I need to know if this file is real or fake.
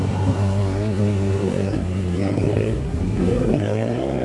fake